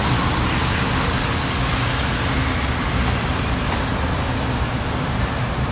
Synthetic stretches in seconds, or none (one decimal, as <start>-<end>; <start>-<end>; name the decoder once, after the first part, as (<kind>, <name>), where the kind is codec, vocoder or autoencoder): 3.2-3.9 (vocoder, BigVGAN v2); 4.7-5.7